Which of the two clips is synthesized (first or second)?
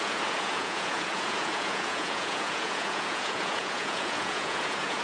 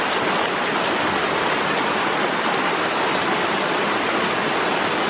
first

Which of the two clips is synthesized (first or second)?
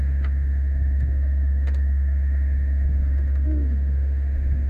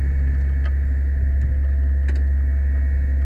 first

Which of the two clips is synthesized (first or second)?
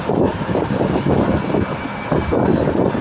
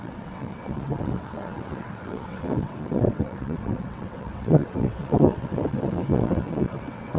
second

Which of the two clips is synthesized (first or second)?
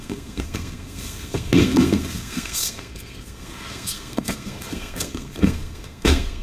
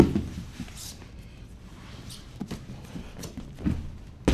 first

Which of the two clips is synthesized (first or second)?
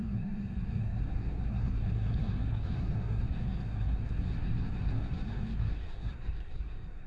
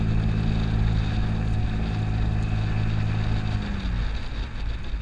first